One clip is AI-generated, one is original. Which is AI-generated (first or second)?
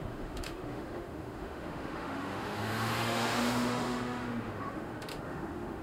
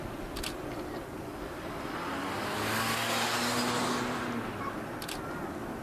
first